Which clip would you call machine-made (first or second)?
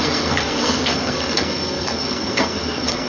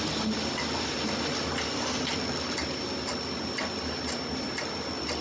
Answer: first